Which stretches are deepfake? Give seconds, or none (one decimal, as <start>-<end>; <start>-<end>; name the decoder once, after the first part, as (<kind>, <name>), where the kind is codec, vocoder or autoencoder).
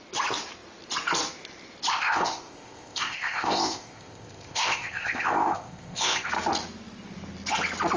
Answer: 1.9-6.3 (codec, ZipCodec)